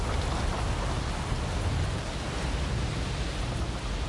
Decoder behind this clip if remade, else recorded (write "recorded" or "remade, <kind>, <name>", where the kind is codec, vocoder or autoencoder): recorded